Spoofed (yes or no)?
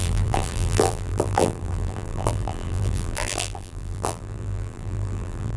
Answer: yes